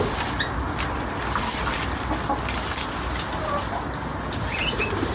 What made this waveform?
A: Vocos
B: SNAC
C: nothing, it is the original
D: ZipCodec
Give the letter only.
C